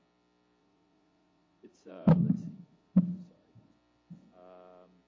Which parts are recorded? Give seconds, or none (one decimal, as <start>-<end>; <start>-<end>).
0.0-0.6; 3.7-5.1